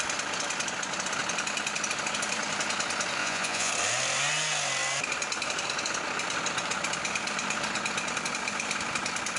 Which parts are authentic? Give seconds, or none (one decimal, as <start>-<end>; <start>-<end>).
0.0-3.2; 3.7-9.4